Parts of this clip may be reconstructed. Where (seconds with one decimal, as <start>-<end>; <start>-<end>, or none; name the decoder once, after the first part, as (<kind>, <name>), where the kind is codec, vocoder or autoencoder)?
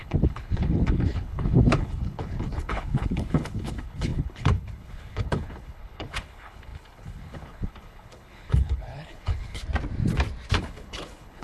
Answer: 0.0-9.6 (codec, HILCodec); 10.6-11.4